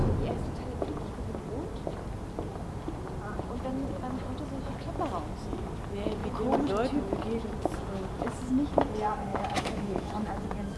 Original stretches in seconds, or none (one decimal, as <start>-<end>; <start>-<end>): 0.0-9.3; 10.1-10.8